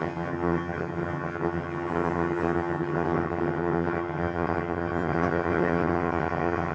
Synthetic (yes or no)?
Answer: yes